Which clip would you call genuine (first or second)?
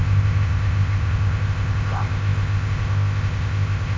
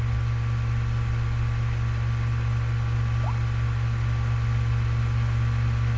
second